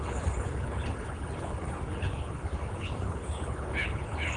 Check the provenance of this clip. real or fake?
fake